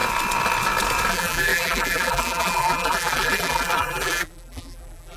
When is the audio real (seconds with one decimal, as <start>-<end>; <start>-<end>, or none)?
0.0-1.1